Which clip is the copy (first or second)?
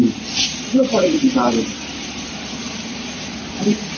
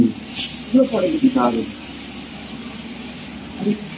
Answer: first